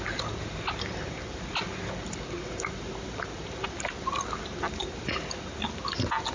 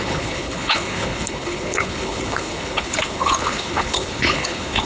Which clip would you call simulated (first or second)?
second